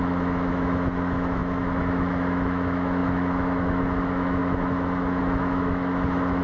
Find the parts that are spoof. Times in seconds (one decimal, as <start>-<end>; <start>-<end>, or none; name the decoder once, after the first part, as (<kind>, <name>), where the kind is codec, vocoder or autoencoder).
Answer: 0.0-6.4 (autoencoder, DAC-VAE)